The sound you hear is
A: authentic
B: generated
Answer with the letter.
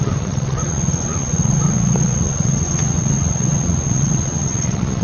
B